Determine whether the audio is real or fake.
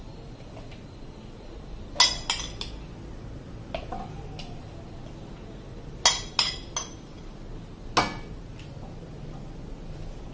real